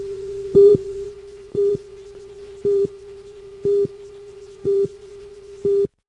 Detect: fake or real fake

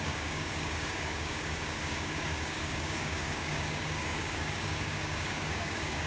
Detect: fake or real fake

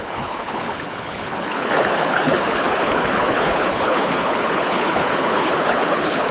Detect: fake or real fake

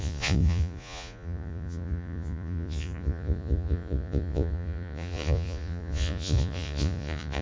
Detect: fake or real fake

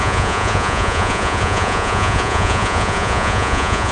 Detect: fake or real fake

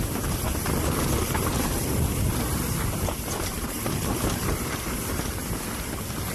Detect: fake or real real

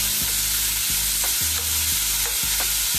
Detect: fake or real real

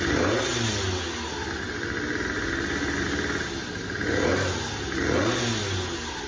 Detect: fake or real real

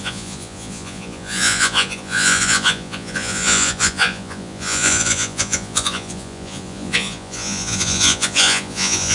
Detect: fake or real fake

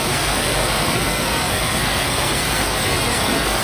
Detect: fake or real fake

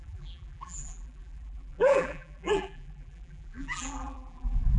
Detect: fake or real fake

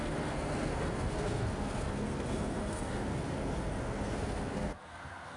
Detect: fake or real fake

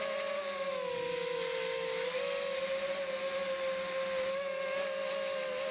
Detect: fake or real real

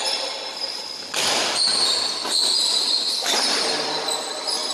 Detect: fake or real real